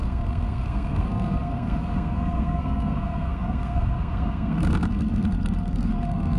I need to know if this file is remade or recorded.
remade